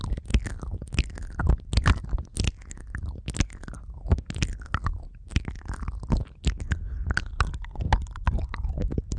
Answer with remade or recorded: recorded